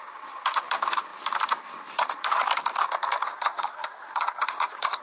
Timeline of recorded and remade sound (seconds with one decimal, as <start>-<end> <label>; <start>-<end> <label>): 0.0-3.3 recorded; 3.3-5.0 remade

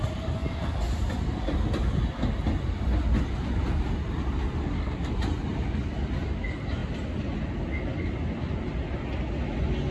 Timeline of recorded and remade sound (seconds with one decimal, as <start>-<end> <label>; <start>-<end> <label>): 0.0-4.6 recorded; 4.6-5.1 remade; 5.1-9.9 recorded

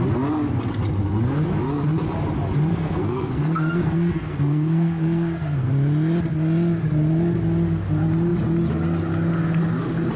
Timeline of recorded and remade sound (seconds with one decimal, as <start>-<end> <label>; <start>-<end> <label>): 0.0-2.7 recorded; 2.7-5.7 remade; 5.7-10.2 recorded